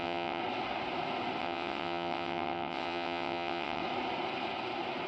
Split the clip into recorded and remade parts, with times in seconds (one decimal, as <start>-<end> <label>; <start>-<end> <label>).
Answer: 0.0-0.4 remade; 0.4-1.4 recorded; 1.4-3.8 remade; 3.8-5.1 recorded